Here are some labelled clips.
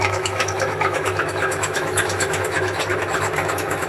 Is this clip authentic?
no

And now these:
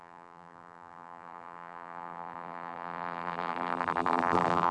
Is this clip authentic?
no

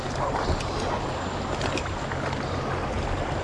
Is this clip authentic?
yes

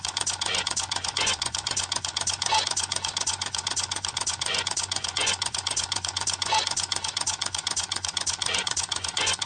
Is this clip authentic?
no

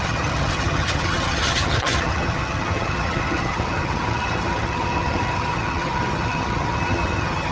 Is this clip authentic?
no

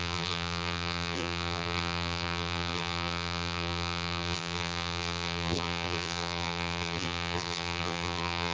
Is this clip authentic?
no